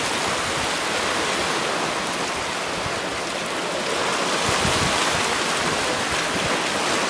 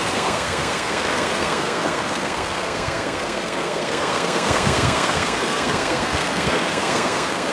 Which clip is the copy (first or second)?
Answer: second